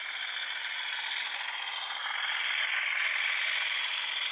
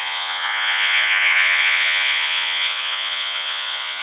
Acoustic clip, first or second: first